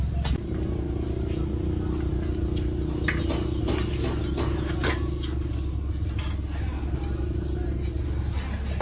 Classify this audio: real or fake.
real